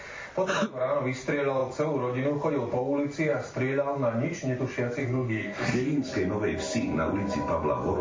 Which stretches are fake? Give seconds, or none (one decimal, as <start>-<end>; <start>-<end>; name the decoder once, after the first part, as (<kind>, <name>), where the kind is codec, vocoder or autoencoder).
5.0-6.1 (codec, SNAC)